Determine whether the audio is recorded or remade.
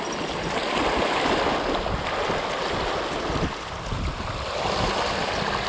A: recorded